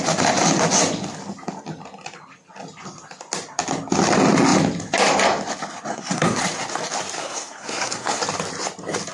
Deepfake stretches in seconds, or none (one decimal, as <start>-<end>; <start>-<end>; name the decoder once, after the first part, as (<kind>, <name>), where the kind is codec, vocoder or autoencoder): 5.9-6.4 (codec, SNAC); 7.2-8.2